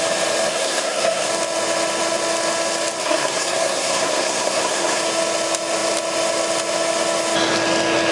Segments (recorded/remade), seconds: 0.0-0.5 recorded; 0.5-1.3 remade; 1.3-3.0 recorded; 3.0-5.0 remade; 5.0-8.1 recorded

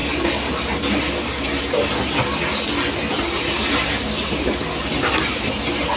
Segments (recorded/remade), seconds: 0.0-6.0 recorded

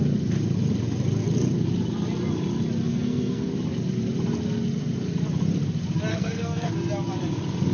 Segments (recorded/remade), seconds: 0.0-2.9 recorded; 2.9-3.5 remade; 3.5-6.1 recorded; 6.1-6.7 remade; 6.7-7.7 recorded

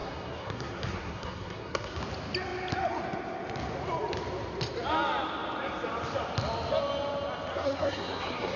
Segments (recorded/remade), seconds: 0.0-2.0 remade; 2.0-7.5 recorded; 7.5-8.6 remade